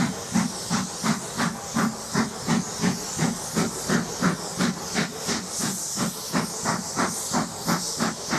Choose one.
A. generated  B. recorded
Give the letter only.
B